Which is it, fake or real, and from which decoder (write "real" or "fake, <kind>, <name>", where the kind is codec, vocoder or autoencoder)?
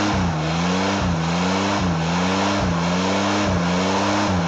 real